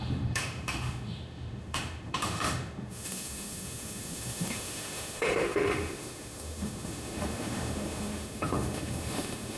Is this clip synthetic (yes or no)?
yes